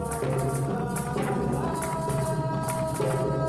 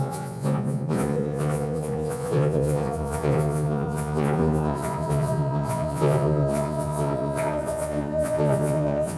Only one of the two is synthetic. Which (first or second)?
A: second